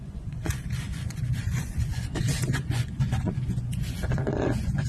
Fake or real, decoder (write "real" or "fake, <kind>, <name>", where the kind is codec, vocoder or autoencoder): fake, vocoder, Vocos